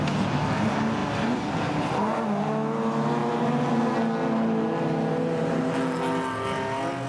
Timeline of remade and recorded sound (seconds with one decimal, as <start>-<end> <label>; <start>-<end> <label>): 0.0-1.0 recorded; 1.0-1.8 remade; 1.8-3.2 recorded; 3.2-4.0 remade; 4.0-7.1 recorded

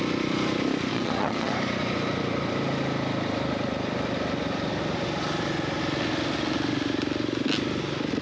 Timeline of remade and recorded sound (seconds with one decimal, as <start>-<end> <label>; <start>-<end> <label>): 0.0-0.9 recorded; 0.9-1.5 remade; 1.5-8.2 recorded

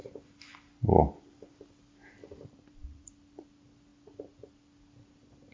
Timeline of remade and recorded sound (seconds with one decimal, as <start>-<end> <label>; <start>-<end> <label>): 0.0-2.2 recorded; 2.2-3.1 remade; 3.1-5.5 recorded

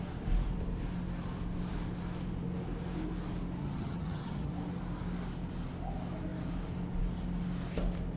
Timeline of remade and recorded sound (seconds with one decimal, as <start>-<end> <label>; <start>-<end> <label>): 0.0-3.6 recorded; 3.6-4.5 remade; 4.5-8.2 recorded